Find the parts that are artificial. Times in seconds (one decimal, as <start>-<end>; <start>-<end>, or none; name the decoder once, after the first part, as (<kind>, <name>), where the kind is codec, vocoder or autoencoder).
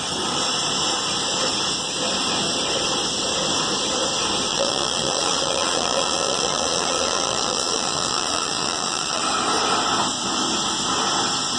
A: 4.5-9.2 (vocoder, Vocos)